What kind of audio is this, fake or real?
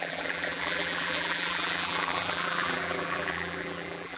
fake